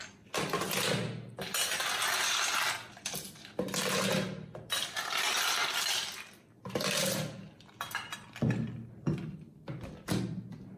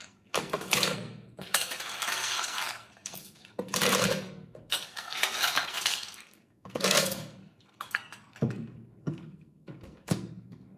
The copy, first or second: second